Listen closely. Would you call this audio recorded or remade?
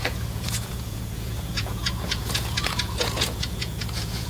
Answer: remade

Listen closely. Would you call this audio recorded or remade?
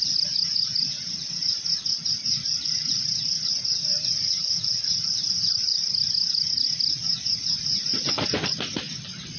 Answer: recorded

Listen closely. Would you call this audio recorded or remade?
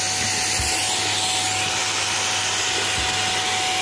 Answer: recorded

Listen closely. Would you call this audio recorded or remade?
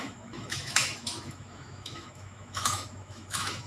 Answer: remade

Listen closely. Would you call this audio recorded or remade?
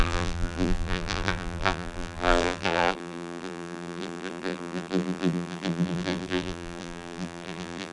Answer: remade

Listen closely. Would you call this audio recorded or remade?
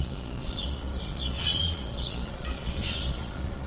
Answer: remade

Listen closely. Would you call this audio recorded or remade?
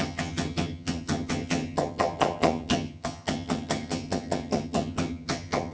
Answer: remade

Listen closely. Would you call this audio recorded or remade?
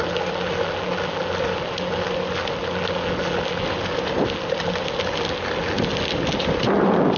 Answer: recorded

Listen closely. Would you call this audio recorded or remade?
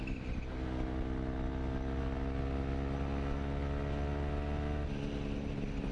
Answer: recorded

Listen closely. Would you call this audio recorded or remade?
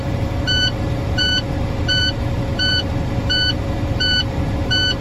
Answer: remade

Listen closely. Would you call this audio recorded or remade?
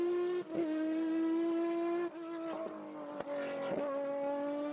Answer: recorded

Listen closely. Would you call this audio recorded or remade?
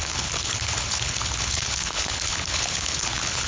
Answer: remade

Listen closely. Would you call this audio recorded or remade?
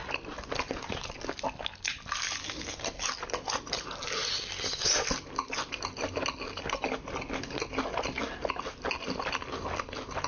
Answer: recorded